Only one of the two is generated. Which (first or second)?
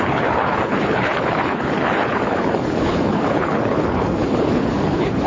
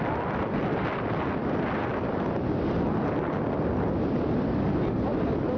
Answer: first